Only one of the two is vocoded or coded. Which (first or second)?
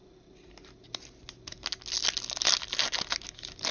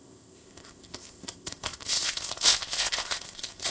second